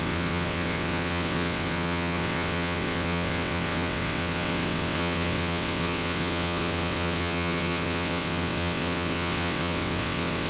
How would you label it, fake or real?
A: fake